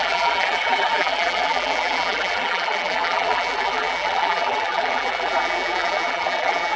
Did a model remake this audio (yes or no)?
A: yes